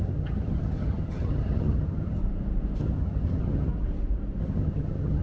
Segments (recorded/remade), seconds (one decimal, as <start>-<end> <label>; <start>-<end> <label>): 0.0-2.2 remade; 2.2-2.8 recorded; 2.8-3.7 remade; 3.7-4.4 recorded; 4.4-5.2 remade